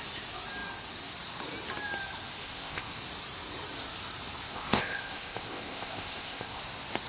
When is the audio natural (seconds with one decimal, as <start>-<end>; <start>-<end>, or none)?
0.0-2.4; 3.0-4.5; 6.6-7.1